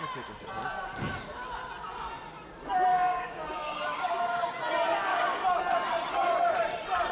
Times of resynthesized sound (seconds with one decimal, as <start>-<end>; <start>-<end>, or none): 2.9-4.5; 5.1-5.6

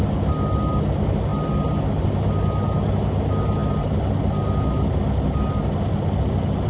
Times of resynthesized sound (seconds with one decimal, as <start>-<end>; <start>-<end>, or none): none